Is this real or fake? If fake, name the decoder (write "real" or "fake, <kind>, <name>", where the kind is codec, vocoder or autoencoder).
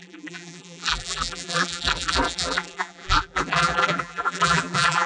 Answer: fake, vocoder, BigVGAN v2